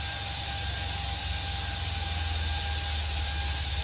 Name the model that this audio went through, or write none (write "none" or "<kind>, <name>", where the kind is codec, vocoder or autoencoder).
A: none